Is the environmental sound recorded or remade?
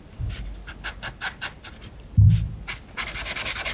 remade